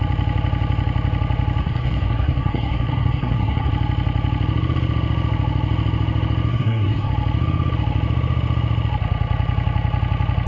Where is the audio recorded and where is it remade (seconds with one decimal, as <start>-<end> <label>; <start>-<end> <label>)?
0.0-1.6 recorded; 1.6-3.7 remade; 3.7-6.5 recorded; 6.5-7.1 remade; 7.1-10.5 recorded